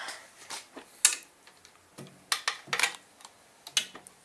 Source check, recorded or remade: recorded